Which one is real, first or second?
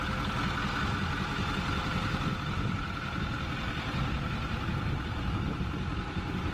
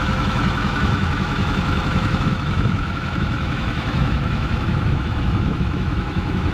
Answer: first